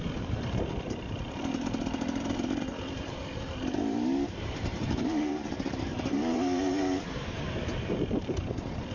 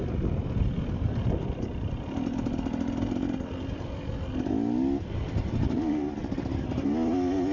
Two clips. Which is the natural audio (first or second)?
second